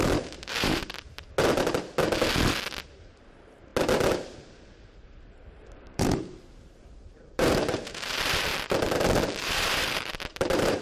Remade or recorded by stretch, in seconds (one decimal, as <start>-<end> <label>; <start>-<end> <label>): 0.0-0.8 remade; 0.8-3.0 recorded; 3.0-3.7 remade; 3.7-4.7 recorded; 4.7-8.5 remade; 8.5-9.4 recorded; 9.4-10.8 remade